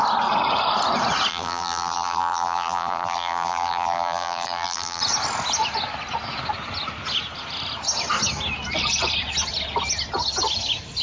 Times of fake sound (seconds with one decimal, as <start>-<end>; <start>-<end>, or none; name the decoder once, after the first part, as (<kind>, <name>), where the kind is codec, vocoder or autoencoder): 1.3-5.0 (vocoder, BigVGAN v2)